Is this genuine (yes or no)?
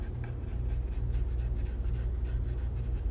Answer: yes